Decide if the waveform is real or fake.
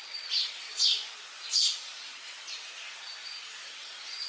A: real